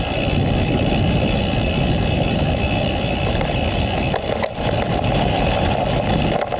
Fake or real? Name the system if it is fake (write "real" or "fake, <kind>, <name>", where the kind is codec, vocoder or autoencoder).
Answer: real